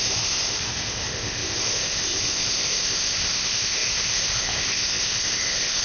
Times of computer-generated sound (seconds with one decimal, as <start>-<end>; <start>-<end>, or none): 0.0-5.8